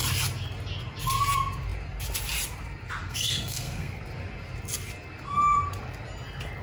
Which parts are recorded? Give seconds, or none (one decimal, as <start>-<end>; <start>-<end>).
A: 0.0-3.0; 4.0-6.6